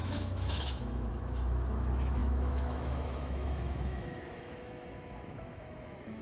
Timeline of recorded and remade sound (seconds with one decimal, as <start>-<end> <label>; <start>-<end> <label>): 0.0-6.2 remade